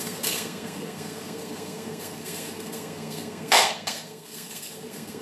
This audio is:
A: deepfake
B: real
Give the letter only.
A